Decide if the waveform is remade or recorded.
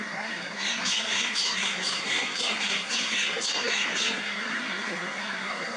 remade